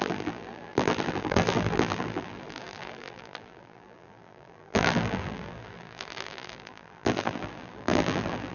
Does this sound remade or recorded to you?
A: remade